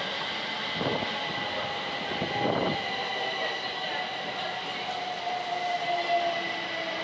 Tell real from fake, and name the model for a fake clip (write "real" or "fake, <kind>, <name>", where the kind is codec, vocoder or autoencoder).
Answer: real